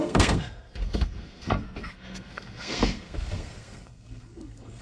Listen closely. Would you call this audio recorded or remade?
remade